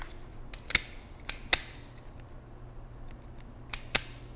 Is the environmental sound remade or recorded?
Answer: recorded